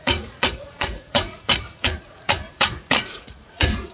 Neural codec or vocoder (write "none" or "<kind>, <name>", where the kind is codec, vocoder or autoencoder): vocoder, Vocos